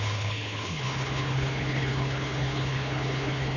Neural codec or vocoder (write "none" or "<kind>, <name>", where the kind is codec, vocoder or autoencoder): codec, HILCodec